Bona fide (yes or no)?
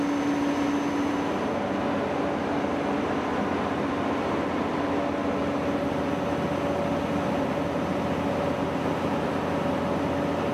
yes